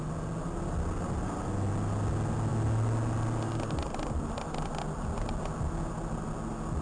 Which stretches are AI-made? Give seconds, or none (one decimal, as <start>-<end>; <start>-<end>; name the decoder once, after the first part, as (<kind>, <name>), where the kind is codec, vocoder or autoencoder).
none